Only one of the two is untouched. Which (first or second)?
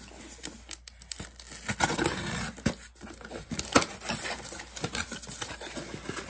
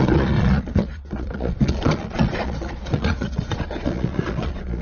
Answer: first